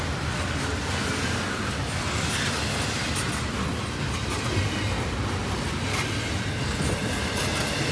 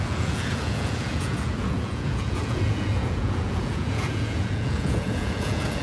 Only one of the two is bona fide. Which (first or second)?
first